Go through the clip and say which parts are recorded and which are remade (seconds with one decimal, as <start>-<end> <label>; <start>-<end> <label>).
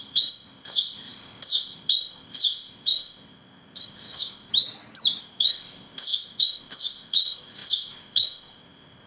0.0-4.5 remade; 4.5-5.2 recorded; 5.2-9.1 remade